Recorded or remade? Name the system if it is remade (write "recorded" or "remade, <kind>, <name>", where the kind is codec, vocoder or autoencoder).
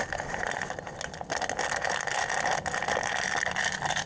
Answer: recorded